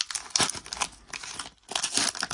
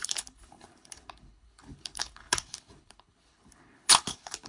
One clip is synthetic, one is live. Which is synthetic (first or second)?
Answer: second